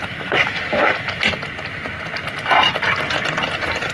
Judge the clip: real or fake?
real